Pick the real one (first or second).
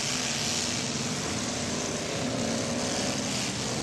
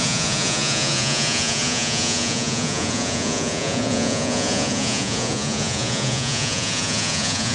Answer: first